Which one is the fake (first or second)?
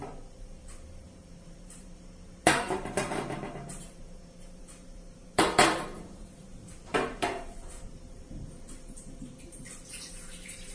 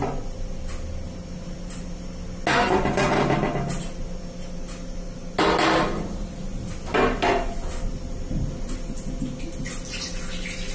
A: first